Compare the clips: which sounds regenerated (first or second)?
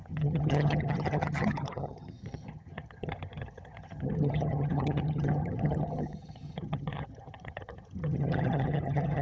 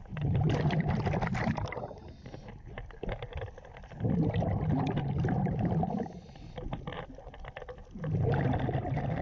first